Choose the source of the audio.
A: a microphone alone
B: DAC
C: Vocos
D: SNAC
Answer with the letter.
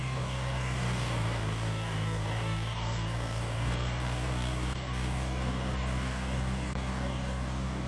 B